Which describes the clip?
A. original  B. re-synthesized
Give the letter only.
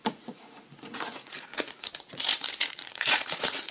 B